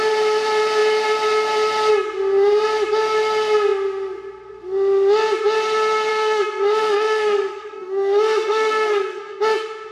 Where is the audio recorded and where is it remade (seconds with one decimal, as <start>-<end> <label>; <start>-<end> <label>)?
0.0-6.1 recorded; 6.1-9.4 remade; 9.4-9.9 recorded